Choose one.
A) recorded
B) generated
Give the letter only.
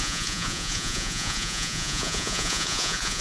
B